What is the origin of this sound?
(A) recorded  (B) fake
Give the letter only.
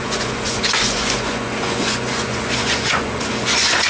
B